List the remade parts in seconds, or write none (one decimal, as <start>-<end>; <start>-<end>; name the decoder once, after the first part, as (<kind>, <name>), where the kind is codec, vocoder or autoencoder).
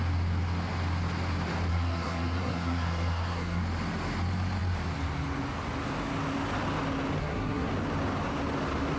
1.7-3.6 (codec, SNAC); 7.2-7.7